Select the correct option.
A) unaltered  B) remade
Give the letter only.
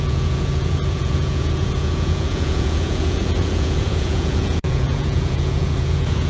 B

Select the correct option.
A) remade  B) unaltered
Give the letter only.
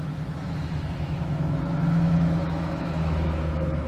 A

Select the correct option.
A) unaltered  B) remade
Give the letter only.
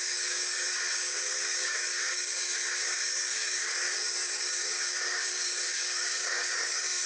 B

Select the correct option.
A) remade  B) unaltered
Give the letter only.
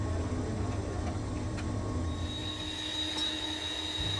B